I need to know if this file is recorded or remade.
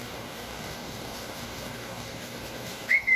remade